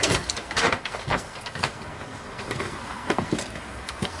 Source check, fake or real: fake